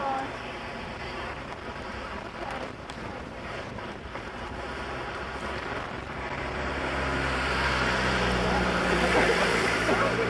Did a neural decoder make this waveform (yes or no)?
yes